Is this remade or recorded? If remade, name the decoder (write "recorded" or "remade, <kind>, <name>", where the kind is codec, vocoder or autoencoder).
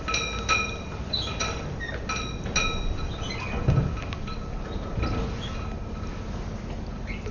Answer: recorded